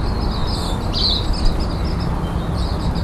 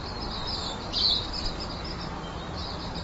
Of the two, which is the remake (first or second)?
second